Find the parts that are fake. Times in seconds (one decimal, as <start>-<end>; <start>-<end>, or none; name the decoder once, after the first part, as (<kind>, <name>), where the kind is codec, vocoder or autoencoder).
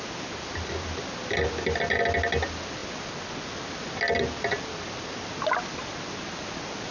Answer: none